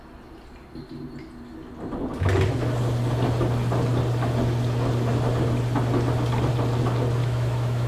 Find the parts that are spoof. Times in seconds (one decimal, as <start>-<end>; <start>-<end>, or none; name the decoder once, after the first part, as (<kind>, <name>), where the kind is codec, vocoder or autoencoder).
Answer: 7.2-7.9 (autoencoder, DAC-VAE)